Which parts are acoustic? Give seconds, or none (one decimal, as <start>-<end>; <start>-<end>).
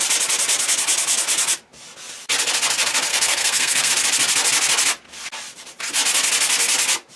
0.0-3.1; 3.9-7.2